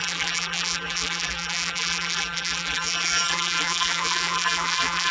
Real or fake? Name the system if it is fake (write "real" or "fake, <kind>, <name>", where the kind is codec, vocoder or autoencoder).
fake, vocoder, BigVGAN v2